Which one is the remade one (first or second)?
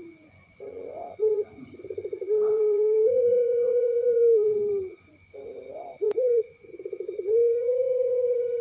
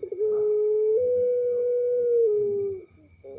first